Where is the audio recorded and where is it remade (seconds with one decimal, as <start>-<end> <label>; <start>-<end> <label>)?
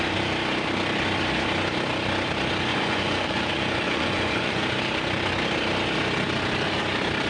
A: 0.0-2.7 recorded; 2.7-4.6 remade; 4.6-7.3 recorded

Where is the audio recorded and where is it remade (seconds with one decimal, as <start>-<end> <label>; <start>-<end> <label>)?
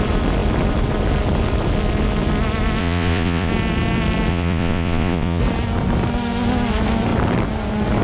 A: 0.0-2.8 recorded; 2.8-3.5 remade; 3.5-4.3 recorded; 4.3-5.4 remade; 5.4-8.0 recorded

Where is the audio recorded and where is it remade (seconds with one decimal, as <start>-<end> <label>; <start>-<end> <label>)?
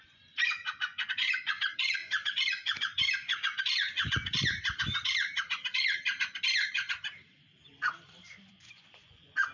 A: 0.0-4.2 remade; 4.2-8.5 recorded; 8.5-9.5 remade